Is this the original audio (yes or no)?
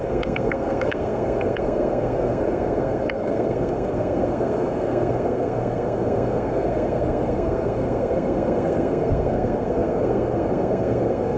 no